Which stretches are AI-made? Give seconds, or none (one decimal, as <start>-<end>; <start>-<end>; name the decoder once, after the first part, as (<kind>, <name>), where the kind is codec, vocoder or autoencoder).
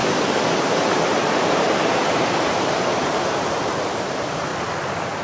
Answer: 0.7-1.2 (vocoder, BigVGAN v2); 2.1-4.5